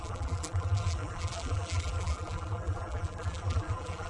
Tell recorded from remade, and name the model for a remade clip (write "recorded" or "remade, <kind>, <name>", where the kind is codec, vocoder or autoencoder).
remade, vocoder, BigVGAN v2